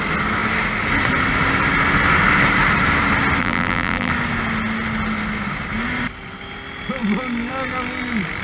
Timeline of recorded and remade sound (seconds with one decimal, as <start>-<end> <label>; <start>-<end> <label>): 0.0-3.4 recorded; 3.4-4.1 remade; 4.1-8.4 recorded